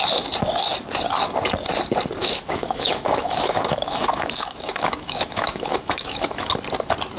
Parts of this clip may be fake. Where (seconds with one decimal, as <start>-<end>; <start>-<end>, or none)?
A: 2.2-6.5